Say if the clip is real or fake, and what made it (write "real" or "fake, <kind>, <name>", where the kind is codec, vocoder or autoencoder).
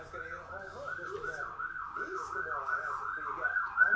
real